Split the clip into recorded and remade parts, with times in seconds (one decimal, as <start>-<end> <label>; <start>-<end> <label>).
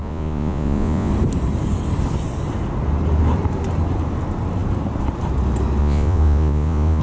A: 0.0-1.1 remade; 1.1-5.8 recorded; 5.8-7.0 remade